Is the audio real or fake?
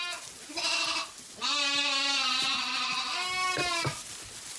real